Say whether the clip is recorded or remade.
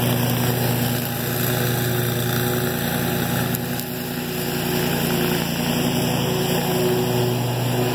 recorded